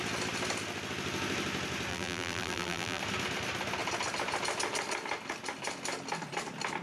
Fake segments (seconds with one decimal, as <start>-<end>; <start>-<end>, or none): 1.9-3.0